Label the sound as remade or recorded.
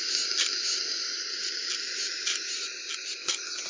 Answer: recorded